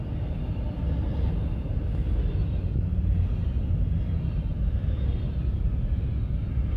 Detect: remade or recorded recorded